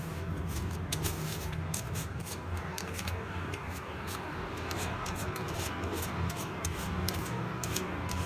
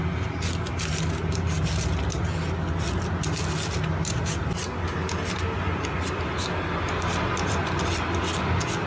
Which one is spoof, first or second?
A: first